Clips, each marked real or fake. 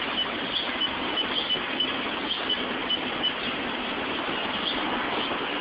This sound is real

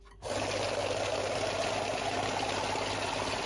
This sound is real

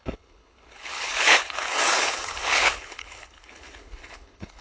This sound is fake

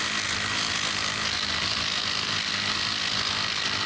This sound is real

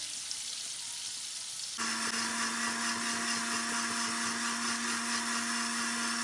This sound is real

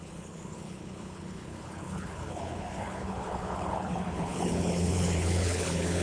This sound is fake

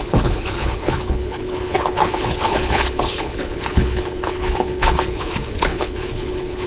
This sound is fake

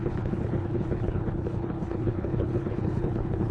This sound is fake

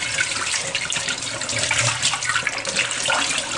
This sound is real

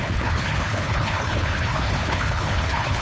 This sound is fake